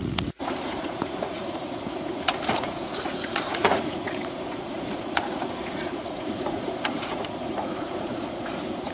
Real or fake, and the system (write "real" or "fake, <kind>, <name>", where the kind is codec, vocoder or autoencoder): fake, vocoder, Vocos